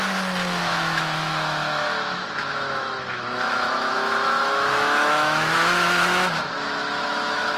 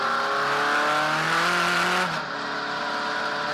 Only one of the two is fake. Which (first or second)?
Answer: first